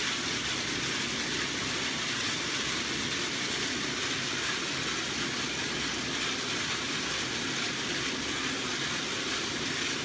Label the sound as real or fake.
real